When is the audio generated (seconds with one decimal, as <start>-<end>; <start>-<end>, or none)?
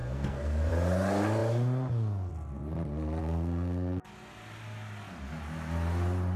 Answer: 0.0-0.7; 3.2-4.1